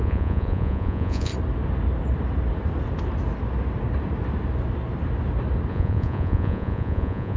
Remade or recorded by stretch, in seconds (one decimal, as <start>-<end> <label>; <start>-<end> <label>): 0.0-1.3 remade; 1.3-5.7 recorded; 5.7-7.4 remade